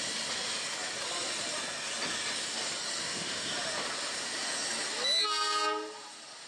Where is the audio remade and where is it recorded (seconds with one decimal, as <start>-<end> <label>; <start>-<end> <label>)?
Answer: 0.0-3.0 recorded; 3.0-3.5 remade; 3.5-6.5 recorded